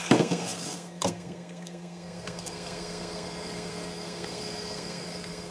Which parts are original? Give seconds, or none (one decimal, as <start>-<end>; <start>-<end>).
none

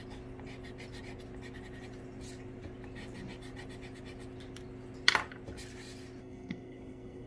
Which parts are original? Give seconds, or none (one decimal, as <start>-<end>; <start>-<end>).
0.0-6.2